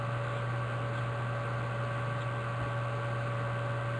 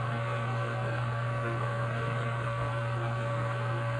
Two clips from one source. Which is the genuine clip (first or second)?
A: first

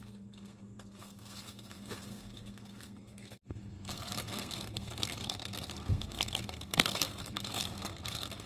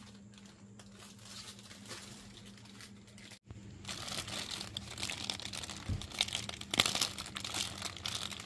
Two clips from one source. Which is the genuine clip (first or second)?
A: second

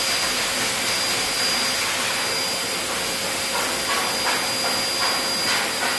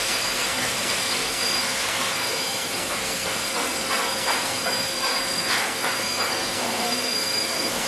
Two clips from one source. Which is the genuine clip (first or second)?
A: first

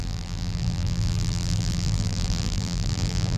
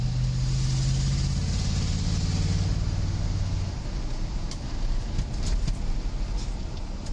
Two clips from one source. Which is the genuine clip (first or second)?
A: second